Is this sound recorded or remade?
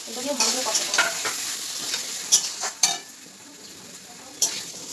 remade